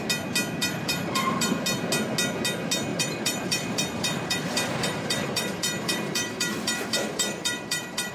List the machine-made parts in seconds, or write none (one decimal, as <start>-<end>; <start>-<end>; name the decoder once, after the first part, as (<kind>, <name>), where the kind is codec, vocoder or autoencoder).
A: 0.6-1.5 (vocoder, BigVGAN v2); 2.9-8.1